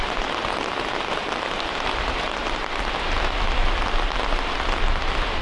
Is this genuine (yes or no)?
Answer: yes